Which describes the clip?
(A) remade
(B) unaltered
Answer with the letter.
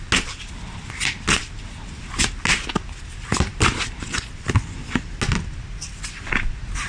B